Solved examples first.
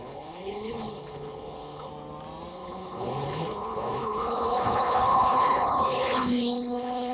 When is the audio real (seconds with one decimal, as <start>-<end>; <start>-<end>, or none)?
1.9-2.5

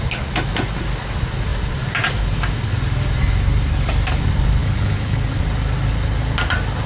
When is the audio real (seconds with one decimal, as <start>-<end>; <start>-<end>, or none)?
0.0-4.6; 5.4-6.9

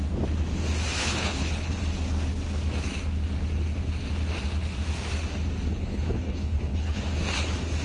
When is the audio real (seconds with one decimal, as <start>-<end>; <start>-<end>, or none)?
0.0-1.0; 1.8-5.7; 7.0-7.8

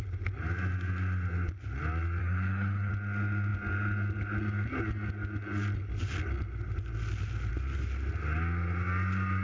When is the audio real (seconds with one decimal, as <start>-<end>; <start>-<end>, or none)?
0.0-2.2; 2.9-9.4

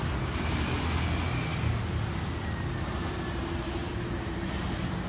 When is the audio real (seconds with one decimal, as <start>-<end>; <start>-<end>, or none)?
0.0-5.1